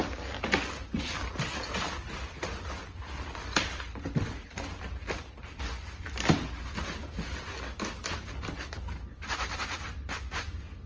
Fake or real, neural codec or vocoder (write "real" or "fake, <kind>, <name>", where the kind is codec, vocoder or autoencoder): real